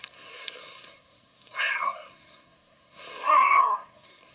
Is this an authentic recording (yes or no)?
no